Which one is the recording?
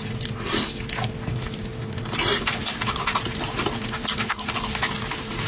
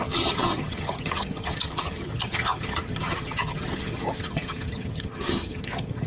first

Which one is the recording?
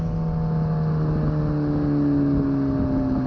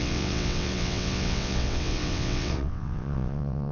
first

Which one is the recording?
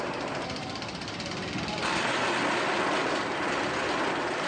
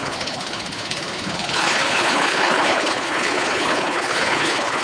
first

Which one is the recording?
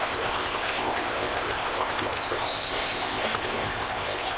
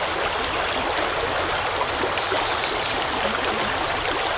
second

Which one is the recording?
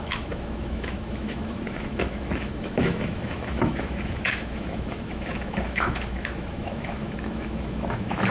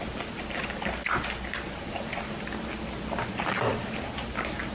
second